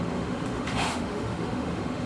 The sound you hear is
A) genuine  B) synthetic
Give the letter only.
B